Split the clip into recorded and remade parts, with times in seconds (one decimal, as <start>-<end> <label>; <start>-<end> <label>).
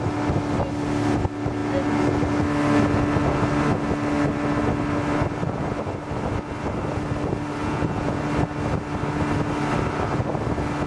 0.0-7.6 recorded; 7.6-8.2 remade; 8.2-10.9 recorded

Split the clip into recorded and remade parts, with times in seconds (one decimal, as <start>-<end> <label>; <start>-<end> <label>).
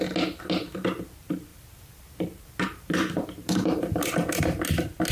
0.0-1.5 recorded; 1.5-4.6 remade; 4.6-5.1 recorded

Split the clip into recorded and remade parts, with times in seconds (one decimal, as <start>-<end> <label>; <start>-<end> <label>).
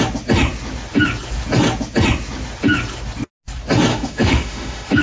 0.0-3.9 recorded; 3.9-5.0 remade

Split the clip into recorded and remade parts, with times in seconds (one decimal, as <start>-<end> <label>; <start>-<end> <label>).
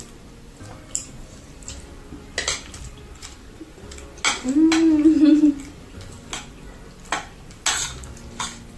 0.0-0.7 recorded; 0.7-2.0 remade; 2.0-8.8 recorded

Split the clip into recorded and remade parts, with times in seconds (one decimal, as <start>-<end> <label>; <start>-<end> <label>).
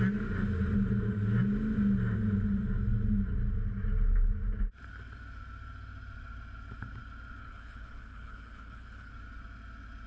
0.0-7.4 recorded; 7.4-9.1 remade; 9.1-10.1 recorded